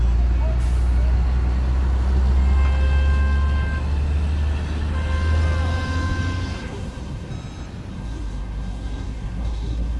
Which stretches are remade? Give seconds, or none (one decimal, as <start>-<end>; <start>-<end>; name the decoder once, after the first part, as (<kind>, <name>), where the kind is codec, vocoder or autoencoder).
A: 6.6-7.3 (codec, SNAC); 7.9-10.0